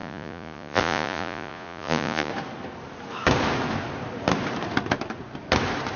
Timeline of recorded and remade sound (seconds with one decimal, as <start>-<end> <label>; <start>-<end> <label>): 0.0-2.3 remade; 2.3-6.0 recorded